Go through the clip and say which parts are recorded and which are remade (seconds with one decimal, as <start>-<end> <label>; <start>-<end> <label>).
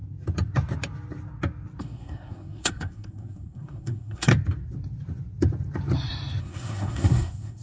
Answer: 0.0-1.8 recorded; 1.8-4.3 remade; 4.3-6.4 recorded; 6.4-7.6 remade